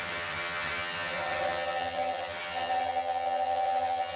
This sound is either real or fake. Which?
fake